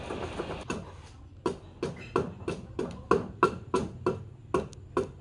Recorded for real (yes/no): yes